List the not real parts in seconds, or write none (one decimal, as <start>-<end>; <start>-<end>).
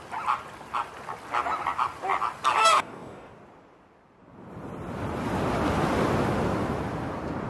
2.6-3.3